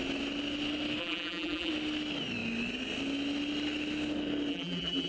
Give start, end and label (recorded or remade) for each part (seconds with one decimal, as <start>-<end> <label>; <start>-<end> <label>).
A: 0.0-1.0 recorded; 1.0-1.7 remade; 1.7-4.5 recorded; 4.5-5.1 remade